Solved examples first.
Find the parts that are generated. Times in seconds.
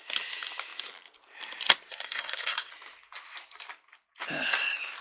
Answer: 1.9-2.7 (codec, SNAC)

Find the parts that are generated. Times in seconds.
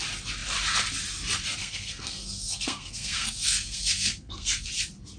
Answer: 1.6-4.7 (codec, SNAC)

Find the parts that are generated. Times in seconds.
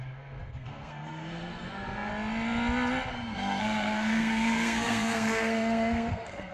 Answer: 0.0-2.1 (codec, SNAC); 3.1-6.5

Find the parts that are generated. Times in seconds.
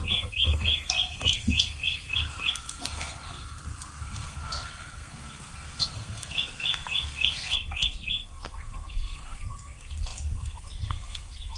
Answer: 0.0-11.6 (codec, SNAC)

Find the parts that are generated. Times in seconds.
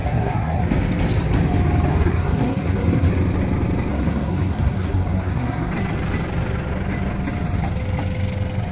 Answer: 0.0-0.6 (codec, SNAC); 1.9-3.1; 3.9-5.7